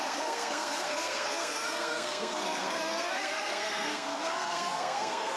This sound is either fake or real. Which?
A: fake